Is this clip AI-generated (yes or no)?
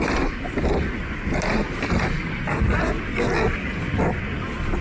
no